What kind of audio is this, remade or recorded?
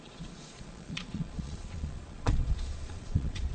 remade